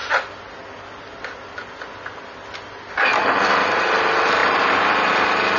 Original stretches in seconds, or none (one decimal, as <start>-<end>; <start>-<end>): 0.0-5.6